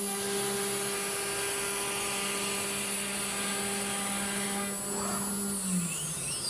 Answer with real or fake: real